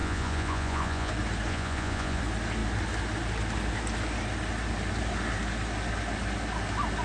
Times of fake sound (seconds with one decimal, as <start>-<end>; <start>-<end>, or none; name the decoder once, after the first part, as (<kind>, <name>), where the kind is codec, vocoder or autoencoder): 0.0-1.1 (vocoder, Vocos); 1.5-2.2